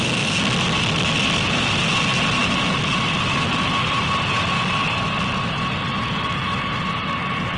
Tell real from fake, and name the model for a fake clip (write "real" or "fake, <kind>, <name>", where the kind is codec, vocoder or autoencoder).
real